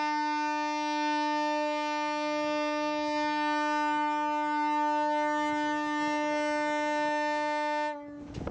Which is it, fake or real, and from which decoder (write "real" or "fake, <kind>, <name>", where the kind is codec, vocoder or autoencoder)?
real